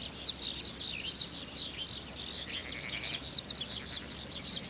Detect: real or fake real